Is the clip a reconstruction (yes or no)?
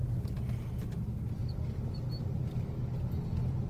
no